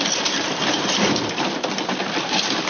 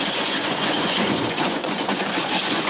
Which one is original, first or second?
first